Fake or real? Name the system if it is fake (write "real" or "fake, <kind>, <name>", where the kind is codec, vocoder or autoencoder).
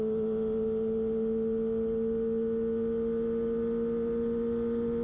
real